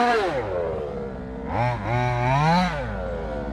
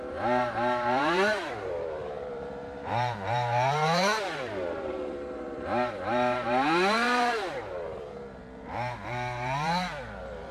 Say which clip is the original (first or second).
first